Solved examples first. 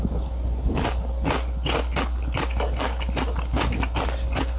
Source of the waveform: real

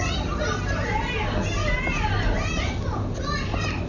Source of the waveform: real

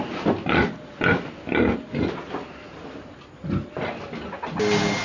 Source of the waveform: real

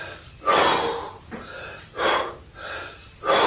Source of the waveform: real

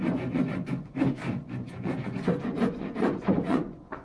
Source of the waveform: fake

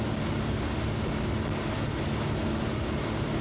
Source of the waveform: real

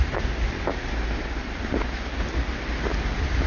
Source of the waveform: real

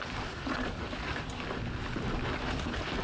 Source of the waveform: real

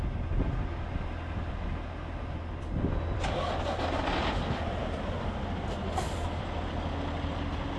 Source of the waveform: real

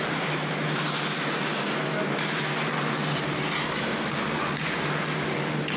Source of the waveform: real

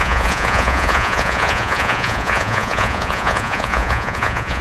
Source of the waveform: fake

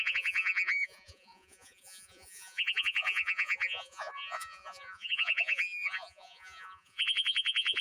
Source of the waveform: fake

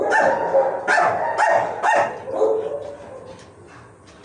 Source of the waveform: real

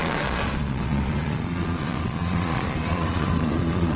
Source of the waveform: fake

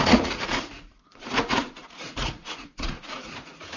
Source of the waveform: fake